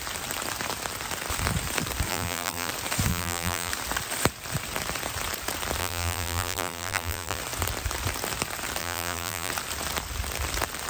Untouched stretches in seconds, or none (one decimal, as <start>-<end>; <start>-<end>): 0.0-2.1; 2.7-3.1; 3.7-5.8; 7.4-8.8; 9.5-10.9